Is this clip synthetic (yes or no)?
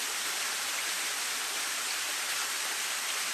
yes